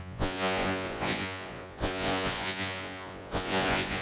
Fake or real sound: fake